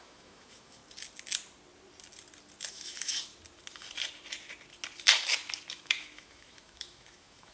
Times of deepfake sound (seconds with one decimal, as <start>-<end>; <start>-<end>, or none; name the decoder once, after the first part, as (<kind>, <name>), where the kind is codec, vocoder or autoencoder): 0.0-0.8 (autoencoder, DAC-VAE); 2.7-3.3; 5.7-7.5